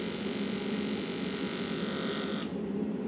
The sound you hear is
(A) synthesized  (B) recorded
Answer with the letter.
B